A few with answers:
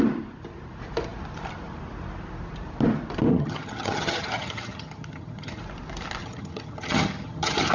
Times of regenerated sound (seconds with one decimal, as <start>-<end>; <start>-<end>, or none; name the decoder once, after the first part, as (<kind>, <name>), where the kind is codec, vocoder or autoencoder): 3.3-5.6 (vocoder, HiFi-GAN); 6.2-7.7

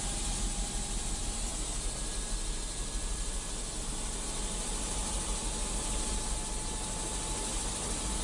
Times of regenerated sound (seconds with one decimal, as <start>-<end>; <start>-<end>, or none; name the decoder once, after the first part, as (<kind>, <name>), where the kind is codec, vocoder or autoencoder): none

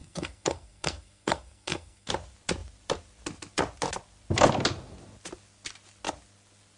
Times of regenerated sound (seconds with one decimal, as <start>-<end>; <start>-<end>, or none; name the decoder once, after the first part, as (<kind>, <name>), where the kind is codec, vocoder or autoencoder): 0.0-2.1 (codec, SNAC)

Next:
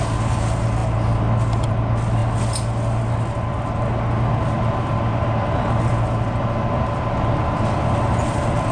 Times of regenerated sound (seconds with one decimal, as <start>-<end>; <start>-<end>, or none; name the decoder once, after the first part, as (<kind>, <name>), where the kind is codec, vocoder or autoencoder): none

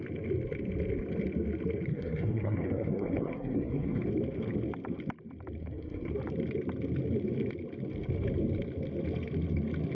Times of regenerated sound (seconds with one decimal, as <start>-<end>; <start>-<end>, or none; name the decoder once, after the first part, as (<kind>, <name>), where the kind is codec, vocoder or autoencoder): 1.9-4.0 (codec, SNAC); 5.6-6.1